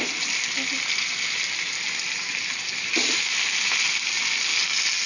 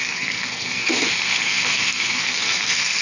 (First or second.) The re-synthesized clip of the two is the second